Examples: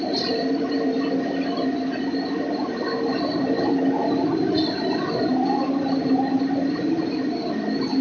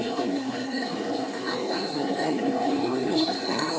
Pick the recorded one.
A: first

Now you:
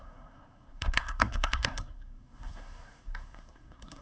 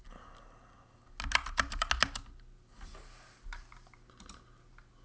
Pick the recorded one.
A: second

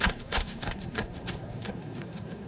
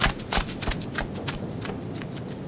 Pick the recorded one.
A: second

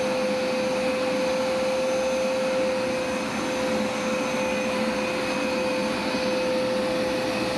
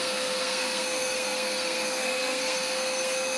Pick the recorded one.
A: first